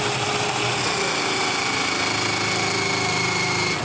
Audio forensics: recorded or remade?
recorded